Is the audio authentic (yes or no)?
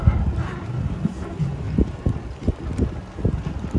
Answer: yes